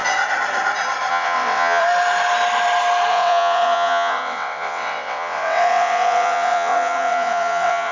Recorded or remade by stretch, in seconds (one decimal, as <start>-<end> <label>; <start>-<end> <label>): 0.0-1.1 recorded; 1.1-1.8 remade; 1.8-3.1 recorded; 3.1-7.9 remade